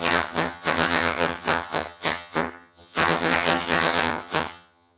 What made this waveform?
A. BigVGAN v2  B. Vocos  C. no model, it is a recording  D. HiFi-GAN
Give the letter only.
D